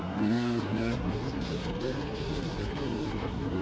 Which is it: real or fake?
fake